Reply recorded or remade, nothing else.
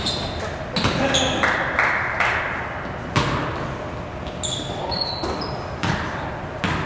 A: recorded